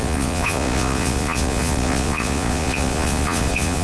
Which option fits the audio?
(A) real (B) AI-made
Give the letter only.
B